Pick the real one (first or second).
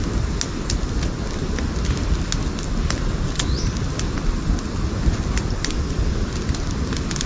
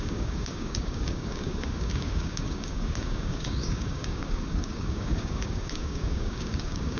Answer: first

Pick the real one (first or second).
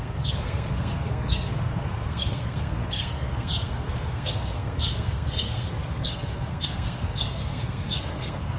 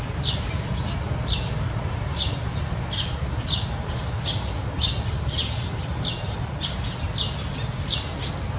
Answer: second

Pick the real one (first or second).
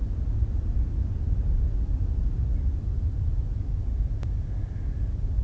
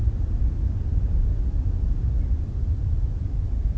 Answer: first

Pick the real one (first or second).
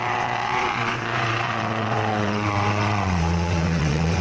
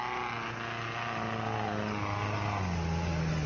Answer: second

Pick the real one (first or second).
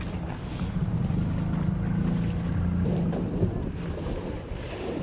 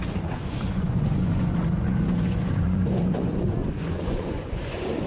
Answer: first